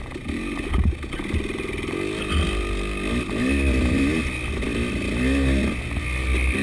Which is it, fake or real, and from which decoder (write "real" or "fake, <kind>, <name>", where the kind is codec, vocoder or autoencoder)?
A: real